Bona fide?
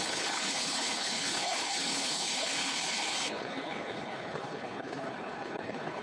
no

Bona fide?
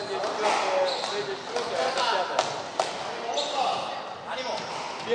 yes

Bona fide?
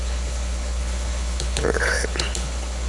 no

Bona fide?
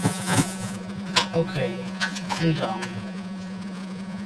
no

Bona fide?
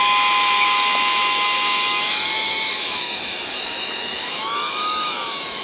no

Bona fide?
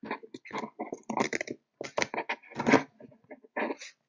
yes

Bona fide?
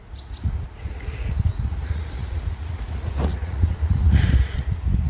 no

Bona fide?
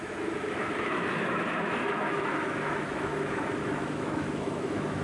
no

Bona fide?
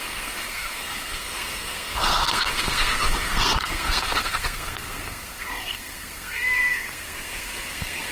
no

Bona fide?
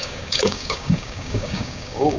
no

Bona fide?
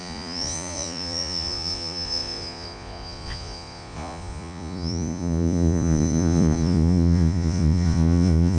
no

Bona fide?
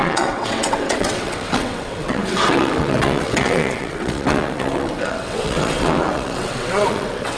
no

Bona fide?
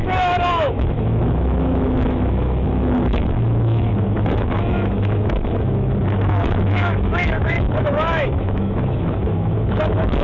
no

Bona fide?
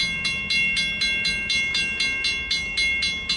yes